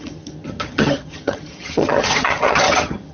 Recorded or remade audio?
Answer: remade